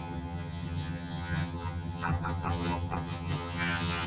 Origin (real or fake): fake